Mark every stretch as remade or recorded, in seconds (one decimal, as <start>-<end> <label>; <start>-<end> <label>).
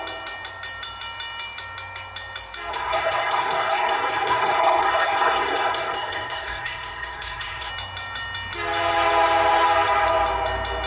0.0-2.7 recorded; 2.7-7.7 remade; 7.7-10.9 recorded